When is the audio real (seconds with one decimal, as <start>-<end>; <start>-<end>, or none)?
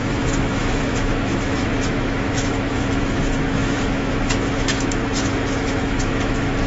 none